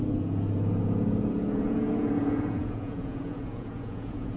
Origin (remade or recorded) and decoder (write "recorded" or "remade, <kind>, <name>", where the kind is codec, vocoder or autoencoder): remade, vocoder, Vocos